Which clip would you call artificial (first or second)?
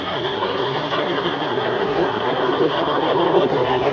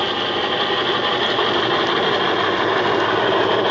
first